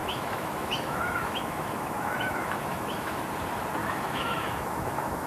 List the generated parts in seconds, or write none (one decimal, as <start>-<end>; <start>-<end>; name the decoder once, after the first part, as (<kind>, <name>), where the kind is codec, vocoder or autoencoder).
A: 0.0-3.2 (autoencoder, DAC-VAE); 3.8-5.3